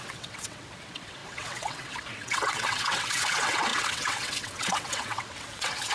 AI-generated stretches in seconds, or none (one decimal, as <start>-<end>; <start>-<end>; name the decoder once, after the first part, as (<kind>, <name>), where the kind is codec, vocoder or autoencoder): 0.0-5.9 (vocoder, WaveNeXt)